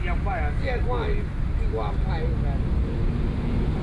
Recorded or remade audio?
recorded